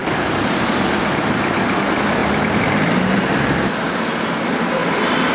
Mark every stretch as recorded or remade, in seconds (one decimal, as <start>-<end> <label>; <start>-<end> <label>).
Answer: 0.0-1.0 remade; 1.0-2.2 recorded; 2.2-3.7 remade; 3.7-4.8 recorded; 4.8-5.3 remade